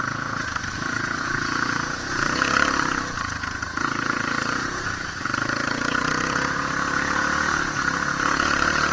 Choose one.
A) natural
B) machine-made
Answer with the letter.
B